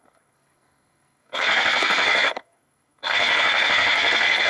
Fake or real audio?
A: fake